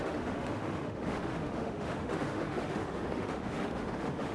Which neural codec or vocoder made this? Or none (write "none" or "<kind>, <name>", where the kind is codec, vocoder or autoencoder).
autoencoder, DAC-VAE